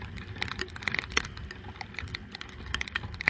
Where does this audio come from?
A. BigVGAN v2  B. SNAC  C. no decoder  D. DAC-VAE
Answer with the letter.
A